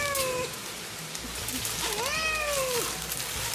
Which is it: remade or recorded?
remade